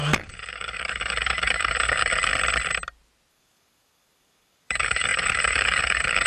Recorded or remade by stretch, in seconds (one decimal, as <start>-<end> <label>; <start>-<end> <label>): 0.0-2.3 remade; 2.3-3.3 recorded; 3.3-6.3 remade